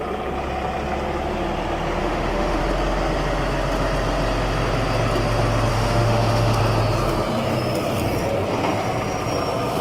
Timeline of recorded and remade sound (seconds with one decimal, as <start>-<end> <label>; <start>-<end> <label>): 0.0-2.0 recorded; 2.0-2.6 remade; 2.6-5.7 recorded; 5.7-6.6 remade; 6.6-9.8 recorded